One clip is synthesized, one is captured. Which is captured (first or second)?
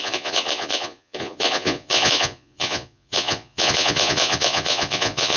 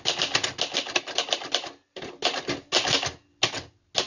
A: second